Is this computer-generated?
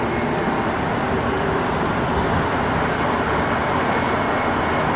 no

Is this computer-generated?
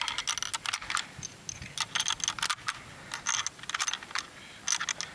no